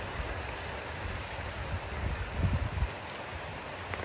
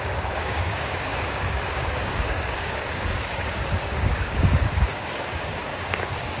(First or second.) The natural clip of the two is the first